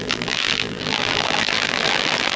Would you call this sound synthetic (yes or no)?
yes